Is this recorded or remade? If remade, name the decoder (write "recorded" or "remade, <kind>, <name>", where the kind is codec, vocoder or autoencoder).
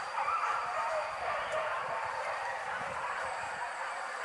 remade, vocoder, BigVGAN v2